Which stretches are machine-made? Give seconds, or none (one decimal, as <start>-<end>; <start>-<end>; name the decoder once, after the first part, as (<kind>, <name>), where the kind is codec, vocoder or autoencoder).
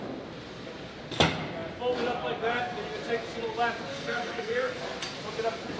3.9-4.8 (codec, SNAC)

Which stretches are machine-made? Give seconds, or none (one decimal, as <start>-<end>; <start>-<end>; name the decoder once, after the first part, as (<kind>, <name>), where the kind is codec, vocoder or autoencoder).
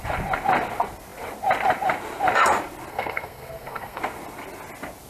2.9-4.0 (codec, SNAC)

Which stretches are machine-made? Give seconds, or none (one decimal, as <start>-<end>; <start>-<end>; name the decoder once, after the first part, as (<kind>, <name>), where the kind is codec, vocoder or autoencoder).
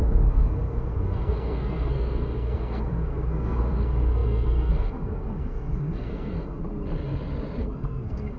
0.0-6.6 (codec, SNAC); 7.6-8.4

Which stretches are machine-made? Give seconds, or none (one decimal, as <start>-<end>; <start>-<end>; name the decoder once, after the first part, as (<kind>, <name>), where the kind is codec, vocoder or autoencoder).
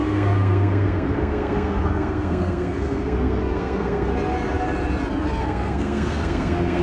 0.0-4.1 (codec, SNAC); 5.4-6.8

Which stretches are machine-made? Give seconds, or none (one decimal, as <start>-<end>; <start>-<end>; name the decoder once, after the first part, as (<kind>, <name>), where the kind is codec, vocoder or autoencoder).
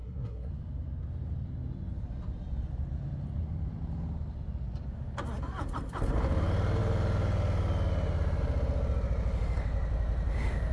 0.0-0.5 (codec, SNAC)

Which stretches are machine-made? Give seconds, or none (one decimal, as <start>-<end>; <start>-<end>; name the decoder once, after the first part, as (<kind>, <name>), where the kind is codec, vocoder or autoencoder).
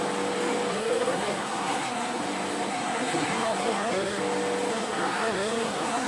0.7-2.2 (codec, SNAC); 2.7-4.2; 4.7-6.1